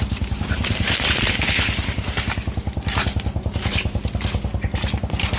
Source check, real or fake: real